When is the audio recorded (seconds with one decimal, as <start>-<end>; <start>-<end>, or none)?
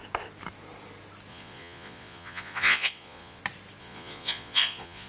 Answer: 0.0-1.3; 3.4-3.8